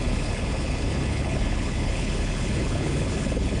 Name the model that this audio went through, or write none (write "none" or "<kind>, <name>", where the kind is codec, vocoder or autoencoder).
codec, HILCodec